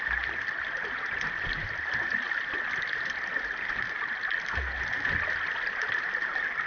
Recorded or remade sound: recorded